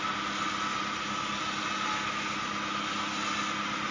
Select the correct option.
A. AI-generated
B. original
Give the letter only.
B